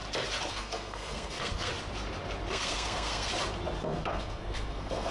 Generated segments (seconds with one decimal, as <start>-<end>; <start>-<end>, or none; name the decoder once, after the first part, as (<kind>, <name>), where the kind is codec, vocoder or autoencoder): 0.5-1.7 (codec, SNAC); 2.5-3.3; 3.8-5.1